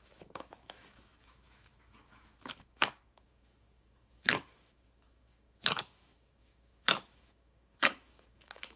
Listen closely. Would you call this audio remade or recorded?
remade